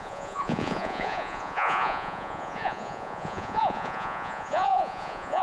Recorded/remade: remade